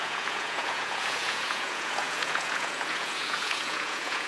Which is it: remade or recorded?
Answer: remade